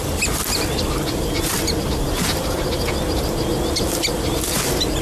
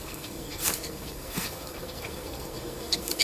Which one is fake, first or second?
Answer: second